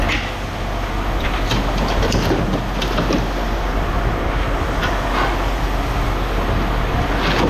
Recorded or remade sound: recorded